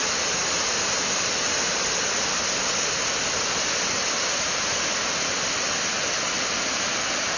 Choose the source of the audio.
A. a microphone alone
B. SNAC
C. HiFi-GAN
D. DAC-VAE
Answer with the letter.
A